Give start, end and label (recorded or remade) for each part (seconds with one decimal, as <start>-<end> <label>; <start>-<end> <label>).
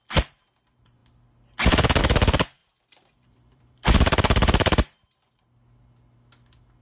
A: 0.0-2.6 recorded; 2.6-5.4 remade; 5.4-6.8 recorded